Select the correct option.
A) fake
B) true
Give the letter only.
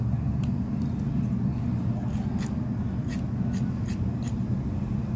B